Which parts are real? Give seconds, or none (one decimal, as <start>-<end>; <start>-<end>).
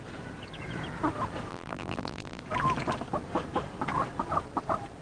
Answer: 0.0-1.5; 2.4-5.0